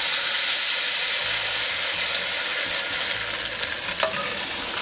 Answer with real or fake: real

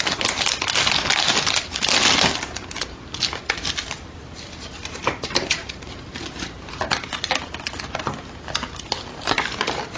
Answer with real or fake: real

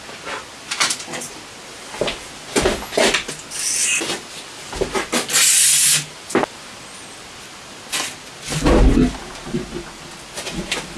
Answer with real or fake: real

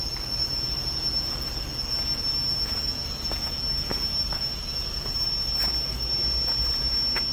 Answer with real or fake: real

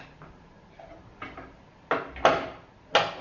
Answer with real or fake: real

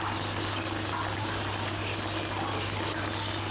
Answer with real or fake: real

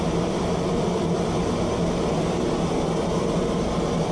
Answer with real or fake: fake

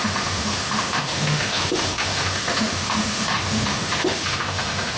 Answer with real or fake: fake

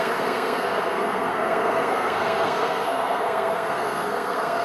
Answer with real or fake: fake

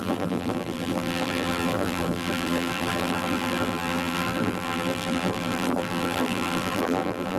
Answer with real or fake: fake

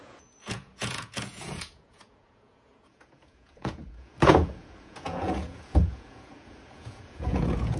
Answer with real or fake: fake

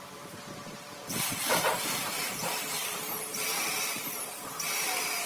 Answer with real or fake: fake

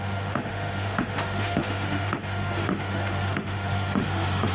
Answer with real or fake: fake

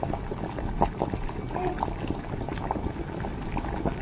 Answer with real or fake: real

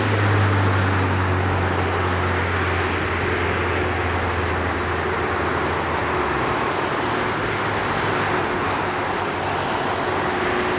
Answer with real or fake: real